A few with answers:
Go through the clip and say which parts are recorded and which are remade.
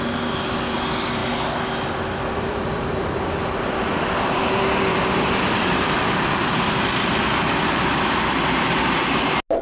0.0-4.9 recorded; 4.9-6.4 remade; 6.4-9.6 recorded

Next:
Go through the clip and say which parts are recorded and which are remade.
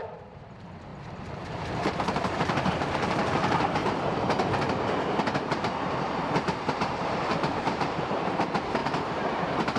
0.0-9.8 remade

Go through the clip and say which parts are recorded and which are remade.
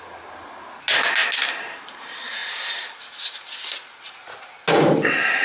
0.0-5.4 recorded